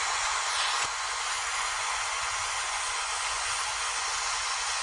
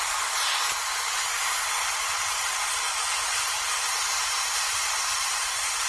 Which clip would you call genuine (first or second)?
second